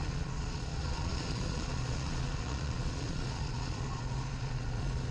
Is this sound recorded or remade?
remade